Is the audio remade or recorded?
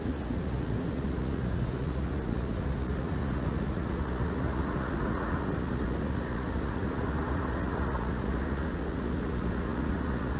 remade